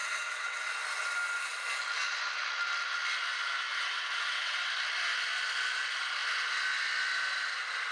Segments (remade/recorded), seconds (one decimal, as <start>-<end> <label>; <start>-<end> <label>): 0.0-0.7 remade; 0.7-3.7 recorded; 3.7-4.6 remade; 4.6-7.9 recorded